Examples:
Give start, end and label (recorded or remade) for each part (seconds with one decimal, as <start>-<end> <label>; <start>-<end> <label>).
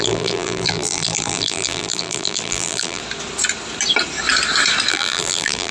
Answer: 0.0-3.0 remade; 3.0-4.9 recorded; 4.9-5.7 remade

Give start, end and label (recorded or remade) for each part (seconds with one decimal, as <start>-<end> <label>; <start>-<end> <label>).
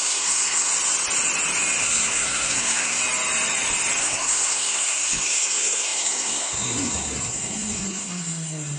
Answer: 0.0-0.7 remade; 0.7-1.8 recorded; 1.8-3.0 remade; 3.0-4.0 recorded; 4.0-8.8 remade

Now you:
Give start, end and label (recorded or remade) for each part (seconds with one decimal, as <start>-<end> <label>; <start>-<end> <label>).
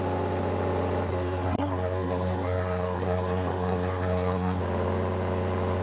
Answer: 0.0-1.1 recorded; 1.1-4.6 remade; 4.6-5.8 recorded